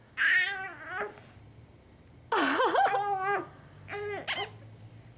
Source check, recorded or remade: recorded